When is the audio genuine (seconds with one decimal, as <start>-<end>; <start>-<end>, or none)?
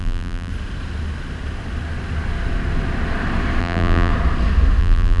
0.5-3.6; 4.1-4.8